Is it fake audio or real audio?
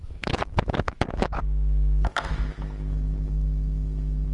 fake